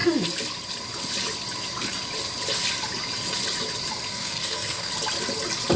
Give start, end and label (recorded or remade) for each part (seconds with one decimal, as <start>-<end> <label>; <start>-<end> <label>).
0.0-4.1 recorded; 4.1-4.9 remade; 4.9-5.8 recorded